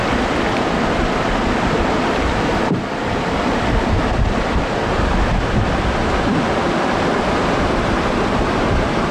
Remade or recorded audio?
recorded